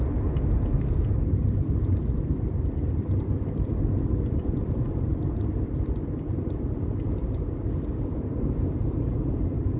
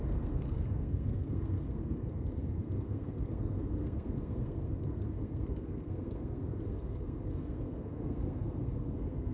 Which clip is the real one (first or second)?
first